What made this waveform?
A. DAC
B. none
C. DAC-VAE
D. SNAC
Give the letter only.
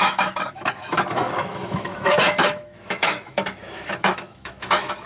C